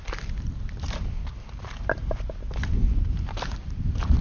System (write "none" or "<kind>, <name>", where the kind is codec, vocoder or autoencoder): none